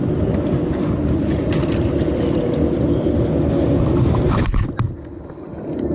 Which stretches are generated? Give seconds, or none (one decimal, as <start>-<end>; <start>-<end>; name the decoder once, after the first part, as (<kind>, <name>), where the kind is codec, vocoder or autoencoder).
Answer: none